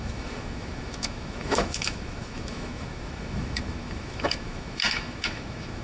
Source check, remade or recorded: remade